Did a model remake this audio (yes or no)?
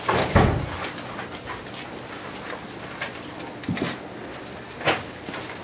no